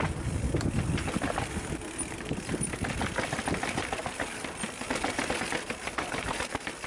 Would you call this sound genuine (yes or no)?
yes